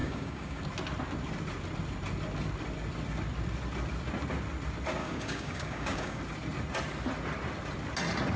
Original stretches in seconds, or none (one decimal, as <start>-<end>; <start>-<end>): 0.6-5.0; 6.2-8.4